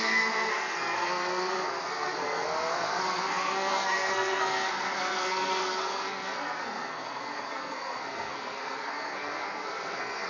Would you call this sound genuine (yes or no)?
no